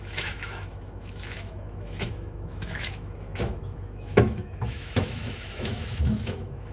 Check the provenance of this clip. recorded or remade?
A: remade